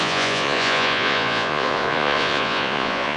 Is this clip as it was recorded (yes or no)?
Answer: no